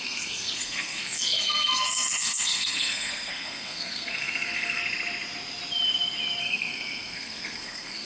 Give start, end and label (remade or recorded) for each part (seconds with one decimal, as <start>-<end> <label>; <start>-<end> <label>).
0.0-4.8 remade; 4.8-6.4 recorded; 6.4-8.0 remade